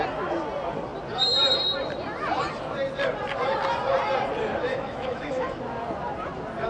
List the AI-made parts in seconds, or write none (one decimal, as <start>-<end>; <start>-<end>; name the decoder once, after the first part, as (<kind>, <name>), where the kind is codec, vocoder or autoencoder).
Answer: 4.7-5.6 (autoencoder, DAC-VAE)